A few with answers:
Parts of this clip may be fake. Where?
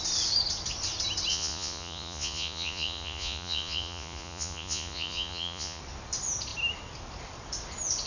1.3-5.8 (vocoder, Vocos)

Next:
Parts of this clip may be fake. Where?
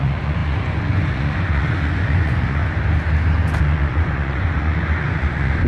0.0-2.6 (vocoder, Vocos); 3.6-5.7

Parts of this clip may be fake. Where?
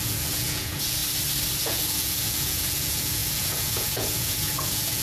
0.0-1.0 (vocoder, Vocos); 1.6-5.0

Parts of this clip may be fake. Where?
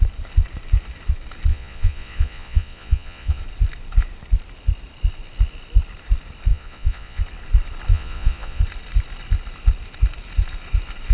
1.5-3.4 (vocoder, Vocos); 6.5-7.2; 7.9-8.6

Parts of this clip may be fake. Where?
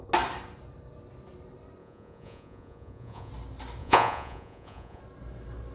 1.8-3.3 (vocoder, Vocos); 3.8-5.0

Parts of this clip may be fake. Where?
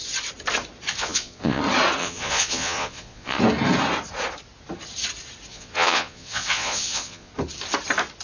0.9-1.6 (vocoder, Vocos); 2.0-3.4; 5.5-7.3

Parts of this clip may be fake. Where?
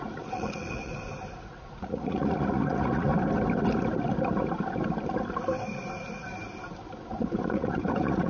0.0-0.9 (vocoder, Vocos); 1.4-3.1; 7.4-8.3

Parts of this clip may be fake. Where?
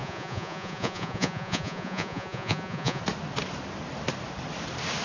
0.0-3.0 (vocoder, Vocos)